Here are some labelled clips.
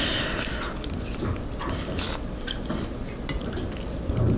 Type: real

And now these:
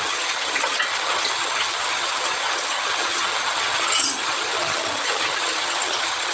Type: fake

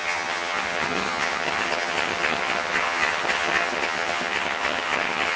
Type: fake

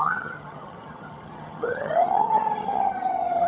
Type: fake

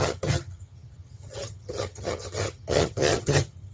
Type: fake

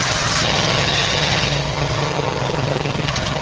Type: fake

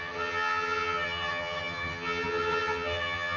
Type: fake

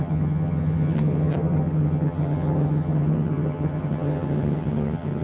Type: fake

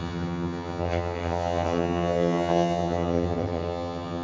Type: fake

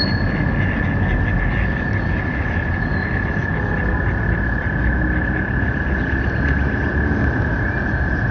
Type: real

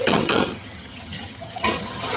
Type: fake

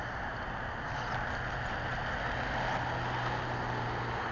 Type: real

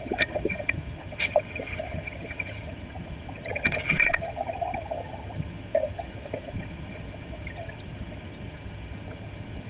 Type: fake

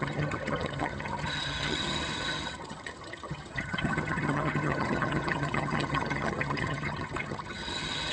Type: fake